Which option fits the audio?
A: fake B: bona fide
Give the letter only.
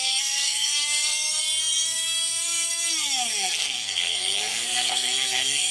A